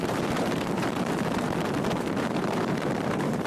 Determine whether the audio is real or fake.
fake